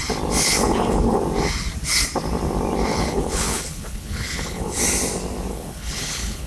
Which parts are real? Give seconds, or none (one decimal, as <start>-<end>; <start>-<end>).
0.0-0.4; 1.2-2.9; 4.8-5.5